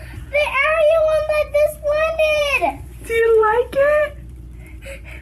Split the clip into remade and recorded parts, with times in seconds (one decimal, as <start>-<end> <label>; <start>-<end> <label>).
0.0-5.2 remade